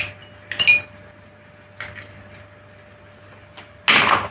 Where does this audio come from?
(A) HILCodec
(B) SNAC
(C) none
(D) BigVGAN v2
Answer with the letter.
C